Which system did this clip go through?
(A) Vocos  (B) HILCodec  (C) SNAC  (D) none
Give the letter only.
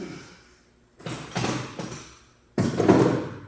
D